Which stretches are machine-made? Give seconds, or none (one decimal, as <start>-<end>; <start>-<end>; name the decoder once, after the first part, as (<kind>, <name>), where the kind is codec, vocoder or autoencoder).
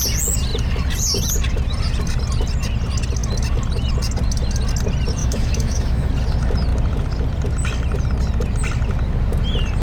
5.2-6.1 (autoencoder, DAC-VAE)